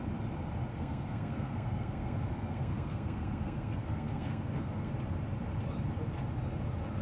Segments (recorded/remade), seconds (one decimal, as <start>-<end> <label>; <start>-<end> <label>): 0.0-0.7 recorded; 0.7-4.9 remade; 4.9-7.0 recorded